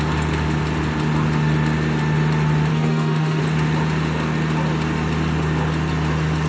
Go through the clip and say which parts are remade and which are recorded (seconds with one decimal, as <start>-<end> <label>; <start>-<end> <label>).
0.0-2.7 recorded; 2.7-3.4 remade; 3.4-6.5 recorded